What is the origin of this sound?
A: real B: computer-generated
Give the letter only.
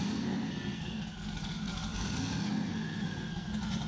B